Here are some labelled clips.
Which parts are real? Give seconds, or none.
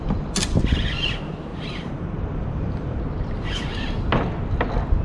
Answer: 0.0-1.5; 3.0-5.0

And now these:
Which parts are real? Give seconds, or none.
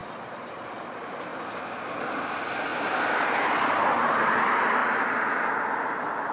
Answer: 0.6-4.8; 5.4-6.3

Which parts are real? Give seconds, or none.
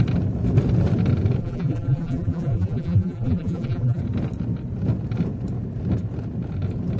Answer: 0.0-1.4; 4.0-7.0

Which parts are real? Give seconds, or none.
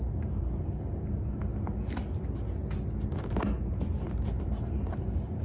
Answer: 1.5-4.4